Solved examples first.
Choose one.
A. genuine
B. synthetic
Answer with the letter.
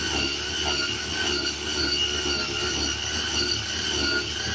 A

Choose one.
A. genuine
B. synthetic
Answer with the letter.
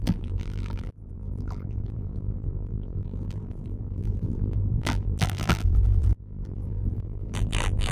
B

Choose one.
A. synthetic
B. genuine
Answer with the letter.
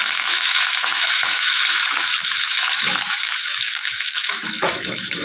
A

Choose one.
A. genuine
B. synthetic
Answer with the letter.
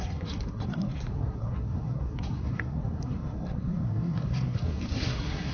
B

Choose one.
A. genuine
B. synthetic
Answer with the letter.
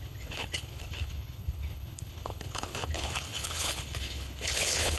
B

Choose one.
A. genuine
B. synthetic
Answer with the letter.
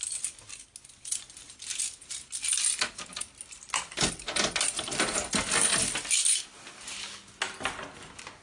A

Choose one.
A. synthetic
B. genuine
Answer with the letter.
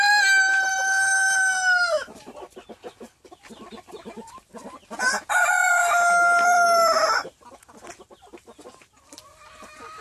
B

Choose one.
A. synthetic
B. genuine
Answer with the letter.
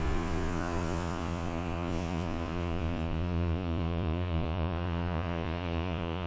A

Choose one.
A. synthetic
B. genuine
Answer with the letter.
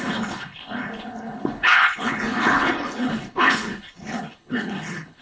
A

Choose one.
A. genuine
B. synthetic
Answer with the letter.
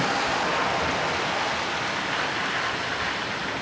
A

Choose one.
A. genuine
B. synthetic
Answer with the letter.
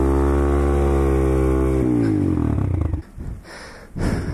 A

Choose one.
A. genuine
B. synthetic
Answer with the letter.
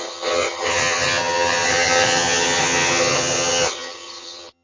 B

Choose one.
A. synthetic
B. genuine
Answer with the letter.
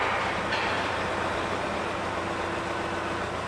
B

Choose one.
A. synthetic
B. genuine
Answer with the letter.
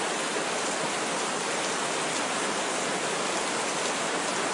A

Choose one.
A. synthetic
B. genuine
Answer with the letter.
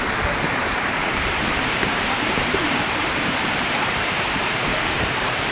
A